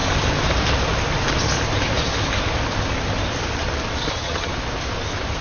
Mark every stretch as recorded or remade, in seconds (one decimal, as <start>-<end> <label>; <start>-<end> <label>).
0.0-4.0 recorded; 4.0-4.5 remade; 4.5-5.4 recorded